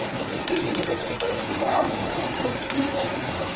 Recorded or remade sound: remade